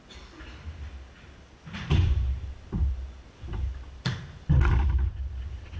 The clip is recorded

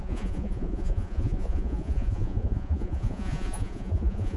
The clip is remade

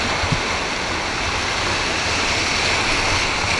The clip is recorded